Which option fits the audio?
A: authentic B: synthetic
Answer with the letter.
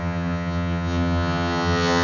B